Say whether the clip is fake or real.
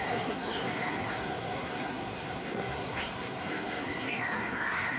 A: fake